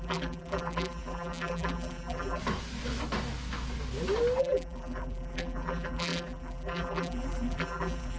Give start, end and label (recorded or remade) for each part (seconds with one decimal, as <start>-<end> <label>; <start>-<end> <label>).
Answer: 0.0-2.4 remade; 2.4-4.4 recorded; 4.4-8.2 remade